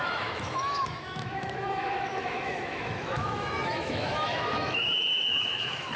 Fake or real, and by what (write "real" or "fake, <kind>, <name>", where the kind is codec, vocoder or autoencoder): fake, autoencoder, DAC-VAE